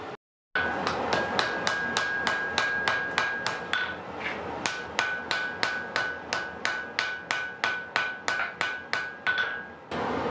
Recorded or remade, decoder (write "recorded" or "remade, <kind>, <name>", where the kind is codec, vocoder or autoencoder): recorded